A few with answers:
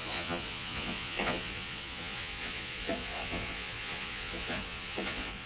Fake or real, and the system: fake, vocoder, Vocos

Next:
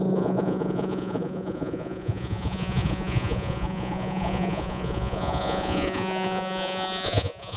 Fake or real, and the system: fake, vocoder, Vocos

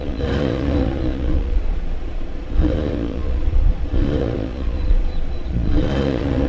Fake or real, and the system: fake, vocoder, Vocos